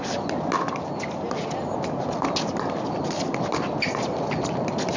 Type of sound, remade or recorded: recorded